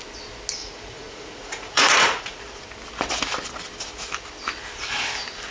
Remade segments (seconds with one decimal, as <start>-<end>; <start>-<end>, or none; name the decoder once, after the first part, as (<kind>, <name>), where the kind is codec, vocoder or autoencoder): 0.6-2.6 (vocoder, Vocos)